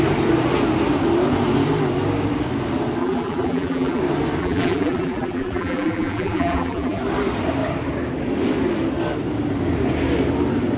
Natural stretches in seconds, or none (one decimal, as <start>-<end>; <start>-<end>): 0.0-3.0; 4.0-4.4; 7.0-10.8

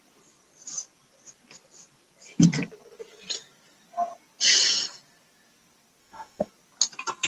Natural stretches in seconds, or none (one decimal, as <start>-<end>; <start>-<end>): 0.0-6.0; 6.5-7.3

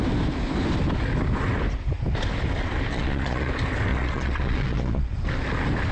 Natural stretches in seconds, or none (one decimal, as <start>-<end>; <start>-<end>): 0.0-2.9; 3.5-3.9; 5.1-5.9